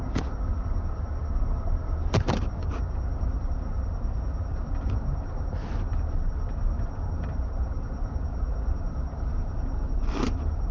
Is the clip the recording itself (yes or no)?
yes